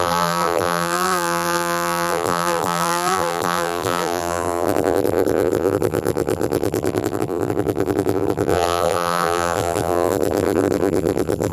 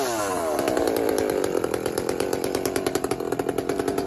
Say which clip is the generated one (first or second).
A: first